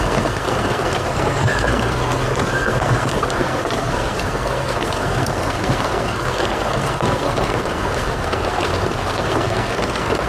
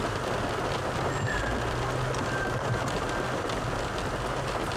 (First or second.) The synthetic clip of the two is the first